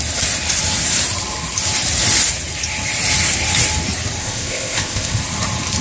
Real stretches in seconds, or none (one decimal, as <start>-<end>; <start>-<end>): 0.0-4.2; 5.2-5.8